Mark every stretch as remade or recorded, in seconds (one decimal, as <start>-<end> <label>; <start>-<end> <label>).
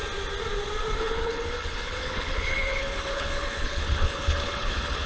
0.0-1.0 recorded; 1.0-5.1 remade